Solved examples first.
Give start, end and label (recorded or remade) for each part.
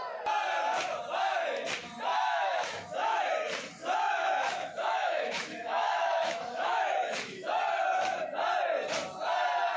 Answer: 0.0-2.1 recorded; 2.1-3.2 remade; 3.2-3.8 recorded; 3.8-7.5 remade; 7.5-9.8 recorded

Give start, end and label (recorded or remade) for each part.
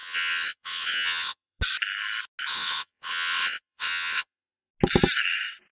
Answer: 0.0-1.6 remade; 1.6-2.5 recorded; 2.5-4.7 remade; 4.7-5.7 recorded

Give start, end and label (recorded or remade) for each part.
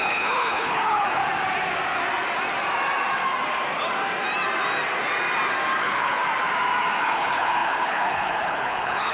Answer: 0.0-1.2 remade; 1.2-5.8 recorded; 5.8-6.2 remade; 6.2-7.0 recorded; 7.0-9.1 remade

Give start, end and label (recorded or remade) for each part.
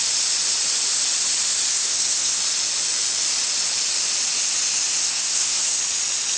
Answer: 0.0-1.7 recorded; 1.7-2.4 remade; 2.4-5.0 recorded; 5.0-5.8 remade; 5.8-6.4 recorded